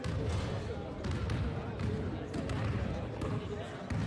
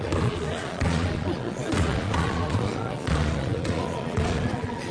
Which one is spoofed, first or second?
second